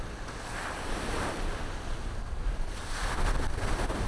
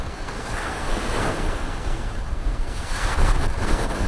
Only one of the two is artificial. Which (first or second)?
second